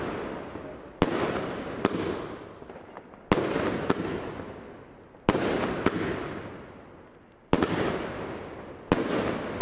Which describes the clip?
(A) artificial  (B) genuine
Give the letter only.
B